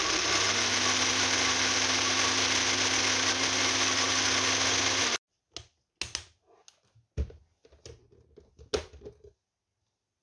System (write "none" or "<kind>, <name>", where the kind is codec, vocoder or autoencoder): none